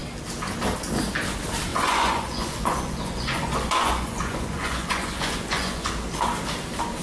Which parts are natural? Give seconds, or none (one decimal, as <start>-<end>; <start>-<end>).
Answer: 0.0-1.7; 5.9-7.0